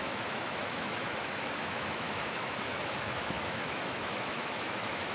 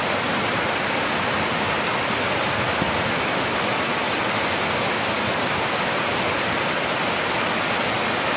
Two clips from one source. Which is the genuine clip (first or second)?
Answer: second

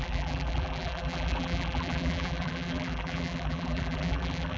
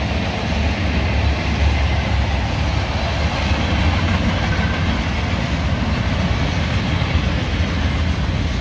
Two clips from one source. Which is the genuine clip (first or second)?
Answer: second